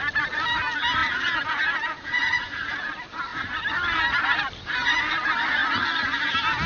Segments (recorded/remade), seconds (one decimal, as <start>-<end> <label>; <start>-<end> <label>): 0.0-1.0 recorded; 1.0-2.9 remade; 2.9-6.7 recorded